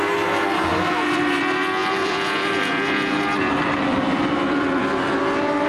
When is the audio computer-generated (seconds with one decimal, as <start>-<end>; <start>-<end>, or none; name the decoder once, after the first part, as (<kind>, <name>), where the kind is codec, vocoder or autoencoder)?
0.7-1.4 (vocoder, BigVGAN v2); 1.8-5.2